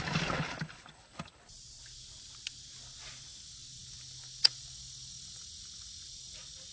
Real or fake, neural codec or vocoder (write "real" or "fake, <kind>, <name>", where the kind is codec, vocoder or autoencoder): real